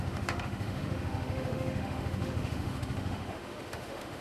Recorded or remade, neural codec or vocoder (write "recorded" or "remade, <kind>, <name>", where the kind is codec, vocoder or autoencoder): remade, autoencoder, DAC-VAE